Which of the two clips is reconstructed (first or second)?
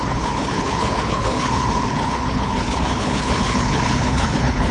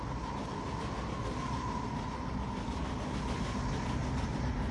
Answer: first